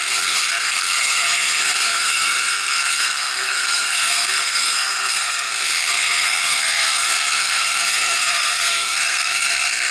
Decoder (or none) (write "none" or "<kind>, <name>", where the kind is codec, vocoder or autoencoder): codec, SNAC